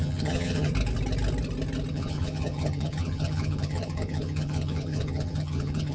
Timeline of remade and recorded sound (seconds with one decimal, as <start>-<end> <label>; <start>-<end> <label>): 0.0-0.7 remade; 0.7-1.9 recorded; 1.9-5.9 remade

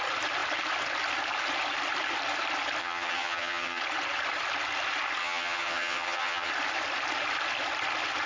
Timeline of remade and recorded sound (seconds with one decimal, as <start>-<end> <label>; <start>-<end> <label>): 0.0-2.8 recorded; 2.8-3.8 remade; 3.8-5.2 recorded; 5.2-6.5 remade; 6.5-8.3 recorded

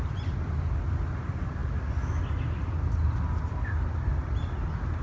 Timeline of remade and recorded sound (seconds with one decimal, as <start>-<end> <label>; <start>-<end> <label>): 0.0-5.0 recorded

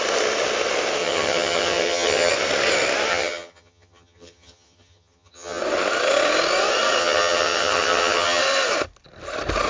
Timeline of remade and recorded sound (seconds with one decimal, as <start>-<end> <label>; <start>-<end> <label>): 0.0-1.0 recorded; 1.0-2.3 remade; 2.3-3.1 recorded; 3.1-5.6 remade; 5.6-7.0 recorded; 7.0-8.4 remade; 8.4-9.7 recorded

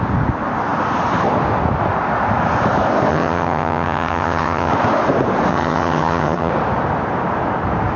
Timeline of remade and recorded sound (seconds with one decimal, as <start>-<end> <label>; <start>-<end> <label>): 0.0-3.1 recorded; 3.1-4.7 remade; 4.7-5.5 recorded; 5.5-6.5 remade; 6.5-8.0 recorded